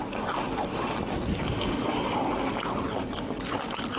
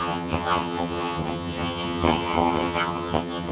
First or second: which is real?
first